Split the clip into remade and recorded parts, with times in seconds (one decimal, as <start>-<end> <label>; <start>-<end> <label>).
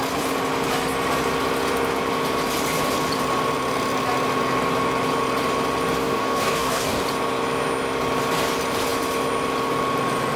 0.0-6.0 recorded; 6.0-7.0 remade; 7.0-10.4 recorded